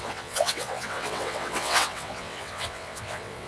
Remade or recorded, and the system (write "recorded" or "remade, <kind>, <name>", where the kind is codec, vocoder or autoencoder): remade, vocoder, WaveNeXt